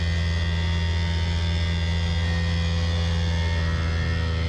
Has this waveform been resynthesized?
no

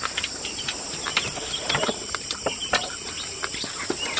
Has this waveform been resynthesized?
yes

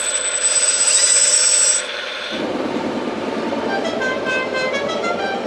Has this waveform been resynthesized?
yes